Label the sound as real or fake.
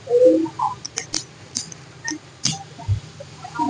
real